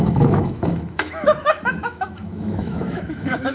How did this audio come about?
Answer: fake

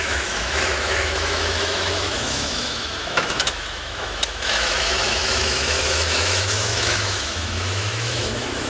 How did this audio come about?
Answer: fake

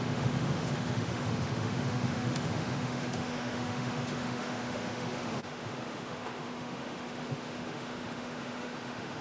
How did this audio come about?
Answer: fake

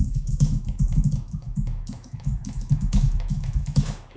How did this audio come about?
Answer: fake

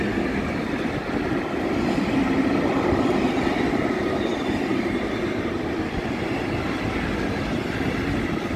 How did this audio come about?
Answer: real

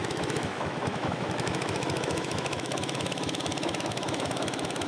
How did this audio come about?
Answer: fake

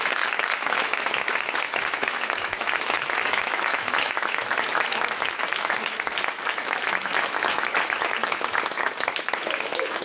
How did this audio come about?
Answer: fake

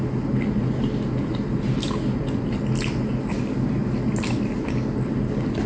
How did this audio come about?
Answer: real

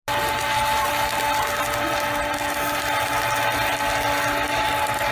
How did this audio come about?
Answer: real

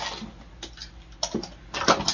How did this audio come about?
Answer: real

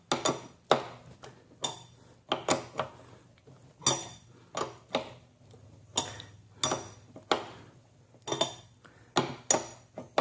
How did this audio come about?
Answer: real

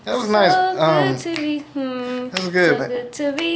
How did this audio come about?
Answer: real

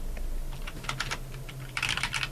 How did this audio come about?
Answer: real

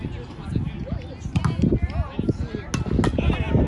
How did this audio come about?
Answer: real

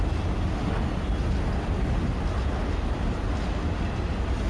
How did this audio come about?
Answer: real